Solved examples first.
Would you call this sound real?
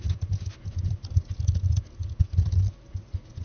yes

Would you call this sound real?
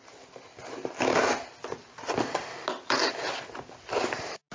yes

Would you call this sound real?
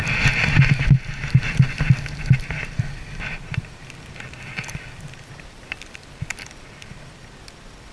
yes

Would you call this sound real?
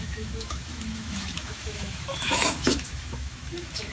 no